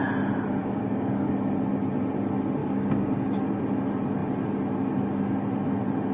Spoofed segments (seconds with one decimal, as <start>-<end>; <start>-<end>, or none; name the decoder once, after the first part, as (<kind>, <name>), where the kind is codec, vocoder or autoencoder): 0.6-1.3 (codec, DAC); 2.6-3.6